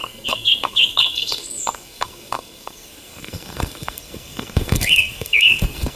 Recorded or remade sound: remade